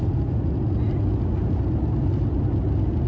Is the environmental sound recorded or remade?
recorded